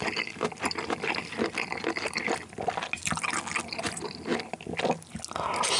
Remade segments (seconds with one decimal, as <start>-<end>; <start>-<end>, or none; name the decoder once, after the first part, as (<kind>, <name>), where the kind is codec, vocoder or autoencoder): none